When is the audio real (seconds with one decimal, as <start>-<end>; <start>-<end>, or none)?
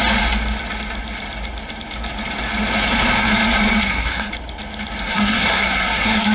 0.0-3.8; 4.3-5.0